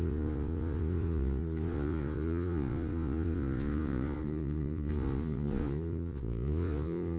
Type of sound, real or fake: fake